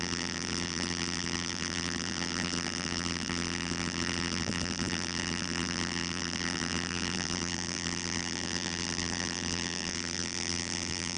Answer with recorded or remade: remade